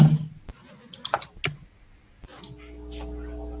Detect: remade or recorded recorded